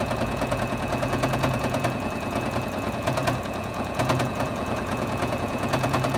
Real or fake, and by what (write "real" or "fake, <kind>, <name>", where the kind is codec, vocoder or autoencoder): fake, vocoder, Vocos